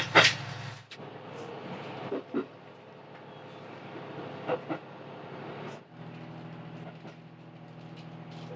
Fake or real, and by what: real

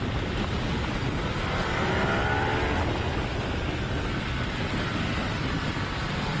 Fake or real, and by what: real